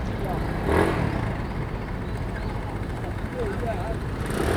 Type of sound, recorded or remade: recorded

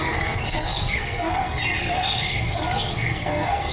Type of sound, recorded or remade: remade